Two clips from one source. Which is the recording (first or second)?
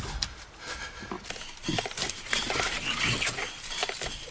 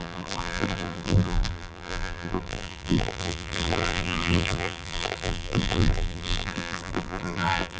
first